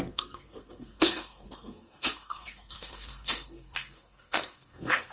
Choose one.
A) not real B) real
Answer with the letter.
A